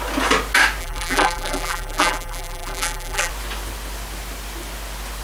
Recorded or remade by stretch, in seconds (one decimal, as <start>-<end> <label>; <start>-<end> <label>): 0.0-0.8 recorded; 0.8-3.3 remade; 3.3-5.2 recorded